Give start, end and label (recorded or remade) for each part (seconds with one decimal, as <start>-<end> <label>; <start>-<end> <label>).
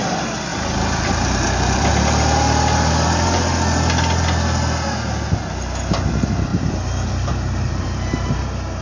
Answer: 0.0-0.5 recorded; 0.5-1.9 remade; 1.9-6.5 recorded; 6.5-8.4 remade; 8.4-8.8 recorded